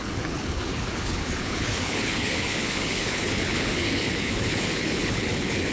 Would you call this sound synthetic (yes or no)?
yes